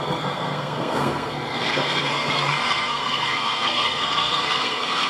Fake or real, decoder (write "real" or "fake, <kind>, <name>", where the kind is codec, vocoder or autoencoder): fake, codec, SNAC